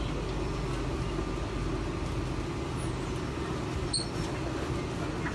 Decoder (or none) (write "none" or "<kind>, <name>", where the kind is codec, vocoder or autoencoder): none